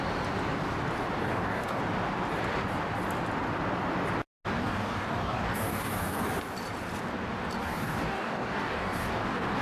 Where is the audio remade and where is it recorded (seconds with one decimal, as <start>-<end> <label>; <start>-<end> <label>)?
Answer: 0.0-1.2 recorded; 1.2-1.8 remade; 1.8-4.6 recorded; 4.6-6.2 remade; 6.2-7.6 recorded; 7.6-9.6 remade